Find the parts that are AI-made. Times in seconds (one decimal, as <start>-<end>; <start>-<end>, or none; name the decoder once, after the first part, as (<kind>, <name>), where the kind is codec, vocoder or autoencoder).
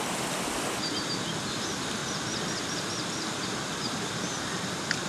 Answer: none